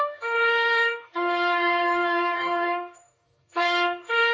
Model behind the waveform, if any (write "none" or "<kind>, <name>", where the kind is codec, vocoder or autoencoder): codec, DAC